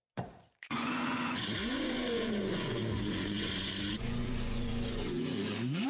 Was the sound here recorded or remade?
remade